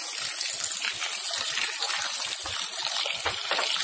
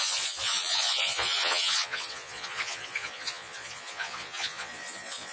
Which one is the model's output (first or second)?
second